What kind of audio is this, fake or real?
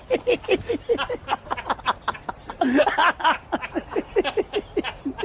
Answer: real